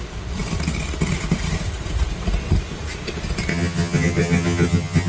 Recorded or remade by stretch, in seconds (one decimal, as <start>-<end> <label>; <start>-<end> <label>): 0.0-3.5 recorded; 3.5-5.1 remade